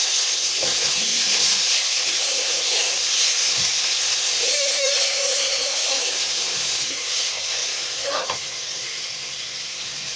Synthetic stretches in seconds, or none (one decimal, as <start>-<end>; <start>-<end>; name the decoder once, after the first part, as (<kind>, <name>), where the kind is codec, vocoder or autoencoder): 0.0-10.2 (codec, SNAC)